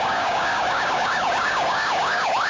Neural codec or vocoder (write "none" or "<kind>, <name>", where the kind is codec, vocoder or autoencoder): codec, DAC